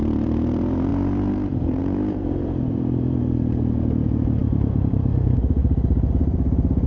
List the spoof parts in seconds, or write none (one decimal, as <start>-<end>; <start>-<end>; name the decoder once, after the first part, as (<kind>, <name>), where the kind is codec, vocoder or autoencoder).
0.0-6.9 (vocoder, BigVGAN v2)